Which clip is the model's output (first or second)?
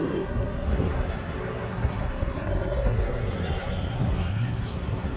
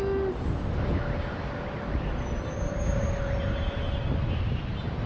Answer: first